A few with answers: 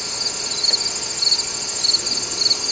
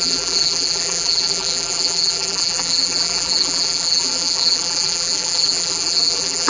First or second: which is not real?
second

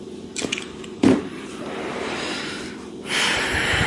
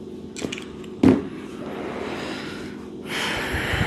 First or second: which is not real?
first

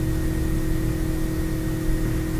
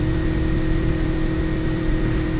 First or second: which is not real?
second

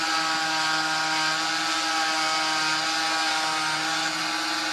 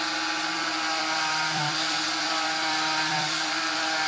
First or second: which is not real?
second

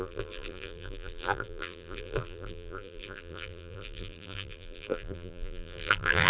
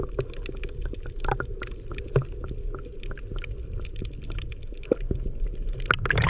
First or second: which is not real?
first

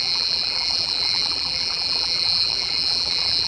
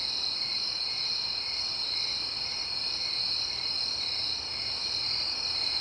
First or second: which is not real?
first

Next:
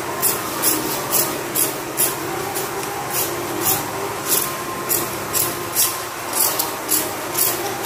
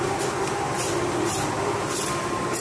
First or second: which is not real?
second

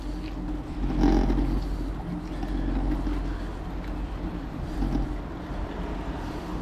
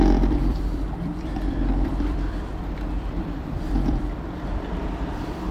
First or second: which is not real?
second